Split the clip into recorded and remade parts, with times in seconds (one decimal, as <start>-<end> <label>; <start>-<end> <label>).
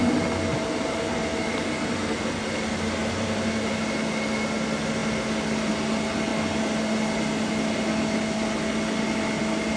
0.0-0.5 recorded; 0.5-1.0 remade; 1.0-3.0 recorded; 3.0-3.7 remade; 3.7-9.8 recorded